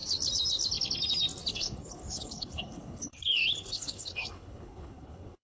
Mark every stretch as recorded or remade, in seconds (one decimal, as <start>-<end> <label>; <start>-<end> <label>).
0.0-1.5 recorded; 1.5-5.4 remade